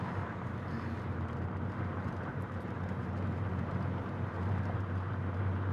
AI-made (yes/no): yes